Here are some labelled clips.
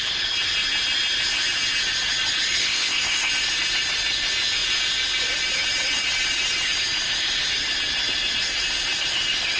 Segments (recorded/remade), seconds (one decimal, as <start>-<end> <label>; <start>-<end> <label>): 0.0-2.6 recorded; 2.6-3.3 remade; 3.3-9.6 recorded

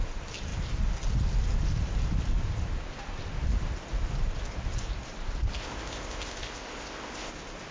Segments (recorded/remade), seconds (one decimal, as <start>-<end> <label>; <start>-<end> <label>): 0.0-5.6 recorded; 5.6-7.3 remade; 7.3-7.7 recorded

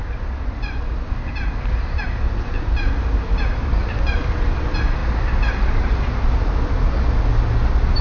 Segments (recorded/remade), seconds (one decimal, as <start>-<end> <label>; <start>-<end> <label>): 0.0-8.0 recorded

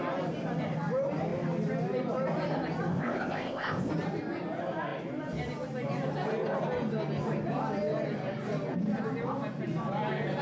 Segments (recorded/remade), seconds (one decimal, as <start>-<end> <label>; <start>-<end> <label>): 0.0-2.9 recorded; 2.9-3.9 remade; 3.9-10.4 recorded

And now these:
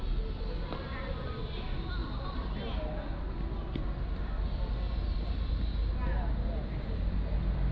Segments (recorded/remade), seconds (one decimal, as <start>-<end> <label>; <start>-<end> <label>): 0.0-7.7 recorded

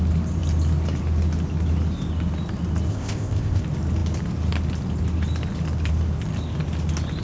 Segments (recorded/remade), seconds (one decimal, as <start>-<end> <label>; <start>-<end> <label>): 0.0-2.9 recorded; 2.9-3.6 remade; 3.6-7.2 recorded

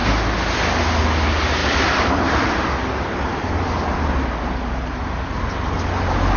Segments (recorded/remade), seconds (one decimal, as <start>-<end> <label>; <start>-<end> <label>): 0.0-6.4 recorded